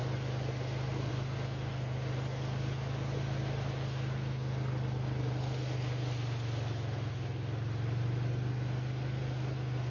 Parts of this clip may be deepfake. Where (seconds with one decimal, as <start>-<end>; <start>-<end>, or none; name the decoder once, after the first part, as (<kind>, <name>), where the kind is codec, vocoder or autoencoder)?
none